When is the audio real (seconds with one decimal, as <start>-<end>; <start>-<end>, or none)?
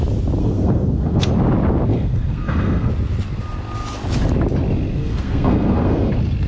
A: 0.0-0.4; 1.3-1.9; 2.9-5.0; 6.1-6.5